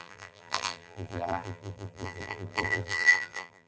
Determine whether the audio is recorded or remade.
remade